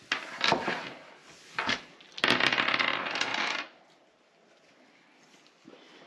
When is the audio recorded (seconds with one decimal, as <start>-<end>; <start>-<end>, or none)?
0.0-6.1